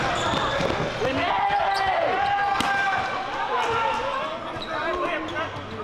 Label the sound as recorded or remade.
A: recorded